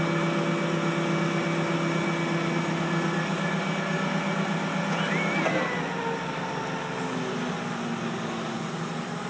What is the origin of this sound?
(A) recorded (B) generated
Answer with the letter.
A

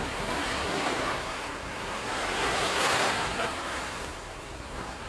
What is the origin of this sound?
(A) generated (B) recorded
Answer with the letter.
A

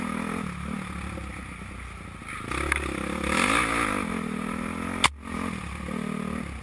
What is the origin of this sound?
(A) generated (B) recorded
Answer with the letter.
B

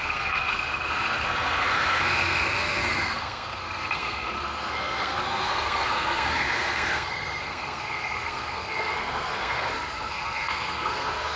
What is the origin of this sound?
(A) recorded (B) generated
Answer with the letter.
B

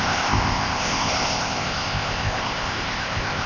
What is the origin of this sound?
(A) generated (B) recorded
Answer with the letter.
A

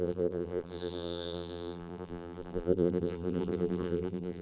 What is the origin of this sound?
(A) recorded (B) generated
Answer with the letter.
B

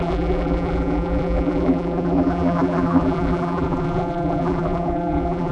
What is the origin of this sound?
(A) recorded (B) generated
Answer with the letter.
B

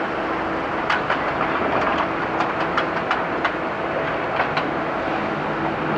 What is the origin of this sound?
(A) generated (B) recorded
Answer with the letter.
B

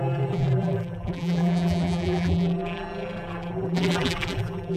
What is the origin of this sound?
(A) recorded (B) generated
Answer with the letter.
B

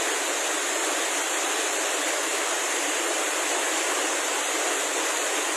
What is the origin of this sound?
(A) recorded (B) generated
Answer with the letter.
A